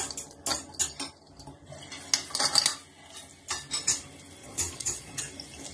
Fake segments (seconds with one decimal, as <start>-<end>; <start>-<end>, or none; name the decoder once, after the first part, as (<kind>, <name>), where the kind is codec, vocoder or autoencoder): 4.4-5.2 (vocoder, Vocos)